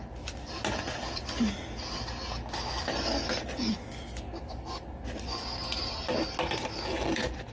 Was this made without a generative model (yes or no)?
yes